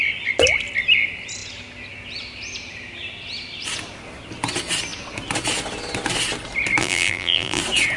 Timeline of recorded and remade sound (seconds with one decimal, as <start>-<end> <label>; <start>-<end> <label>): 0.0-6.8 recorded; 6.8-7.6 remade; 7.6-8.0 recorded